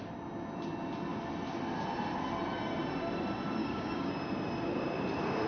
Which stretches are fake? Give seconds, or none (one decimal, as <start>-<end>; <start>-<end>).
3.6-4.1